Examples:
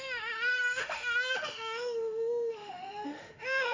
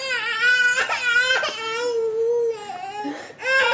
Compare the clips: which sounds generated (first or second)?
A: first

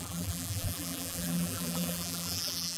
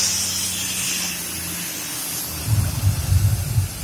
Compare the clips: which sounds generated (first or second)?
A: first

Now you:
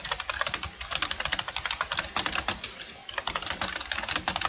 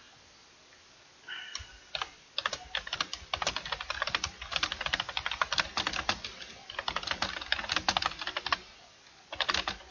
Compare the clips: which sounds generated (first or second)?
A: first